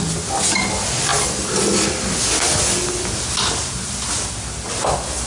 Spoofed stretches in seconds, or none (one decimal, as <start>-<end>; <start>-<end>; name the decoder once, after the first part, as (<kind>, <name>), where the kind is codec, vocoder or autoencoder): none